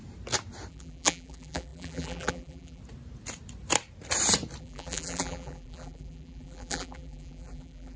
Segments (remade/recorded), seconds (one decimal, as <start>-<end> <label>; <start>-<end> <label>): 0.0-0.7 recorded; 0.7-2.8 remade; 2.8-4.6 recorded; 4.6-8.0 remade